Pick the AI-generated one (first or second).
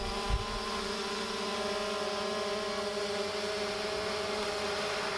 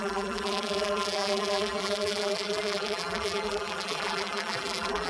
second